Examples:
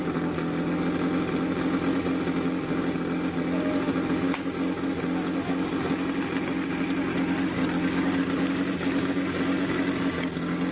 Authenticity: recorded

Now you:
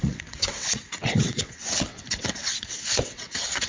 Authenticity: remade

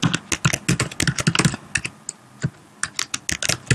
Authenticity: recorded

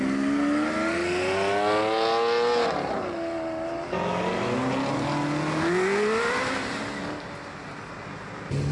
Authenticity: recorded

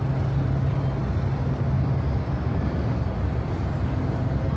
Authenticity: recorded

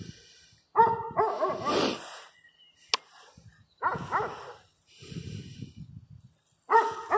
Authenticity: recorded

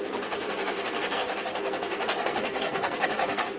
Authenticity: remade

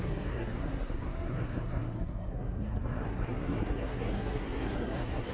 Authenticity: remade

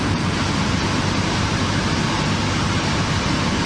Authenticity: remade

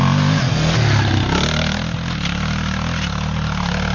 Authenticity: recorded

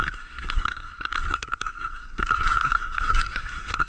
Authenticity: remade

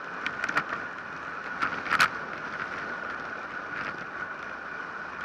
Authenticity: recorded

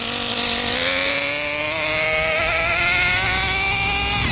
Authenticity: recorded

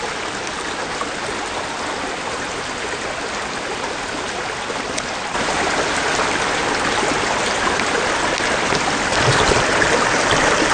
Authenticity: recorded